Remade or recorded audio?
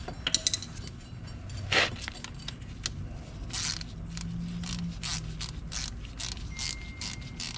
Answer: recorded